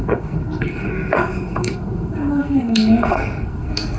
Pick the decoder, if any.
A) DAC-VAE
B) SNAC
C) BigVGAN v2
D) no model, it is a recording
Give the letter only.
B